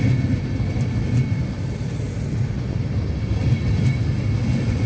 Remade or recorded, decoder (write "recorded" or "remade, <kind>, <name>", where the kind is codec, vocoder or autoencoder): recorded